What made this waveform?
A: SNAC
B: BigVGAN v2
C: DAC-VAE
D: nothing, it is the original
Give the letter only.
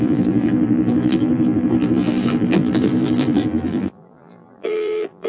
B